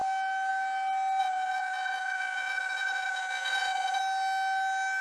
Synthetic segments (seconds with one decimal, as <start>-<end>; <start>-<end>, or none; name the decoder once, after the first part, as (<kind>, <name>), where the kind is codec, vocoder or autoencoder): 1.2-4.0 (vocoder, Vocos)